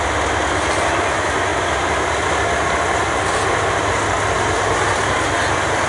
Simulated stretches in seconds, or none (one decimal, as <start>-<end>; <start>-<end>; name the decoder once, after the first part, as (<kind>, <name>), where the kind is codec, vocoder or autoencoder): none